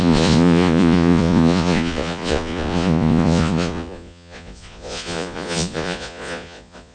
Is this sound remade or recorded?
remade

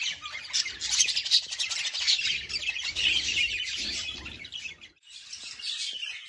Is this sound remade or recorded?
recorded